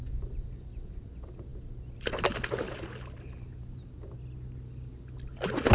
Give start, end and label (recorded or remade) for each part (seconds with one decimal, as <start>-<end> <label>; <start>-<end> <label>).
0.0-5.7 recorded